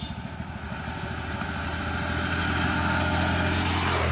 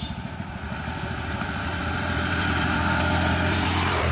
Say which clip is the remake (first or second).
second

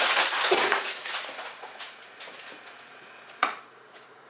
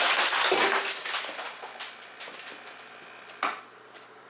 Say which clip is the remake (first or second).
first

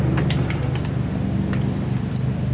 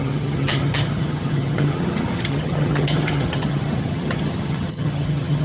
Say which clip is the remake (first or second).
second